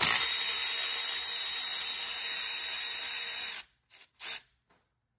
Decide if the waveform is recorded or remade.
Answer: recorded